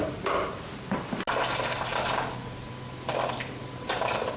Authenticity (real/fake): real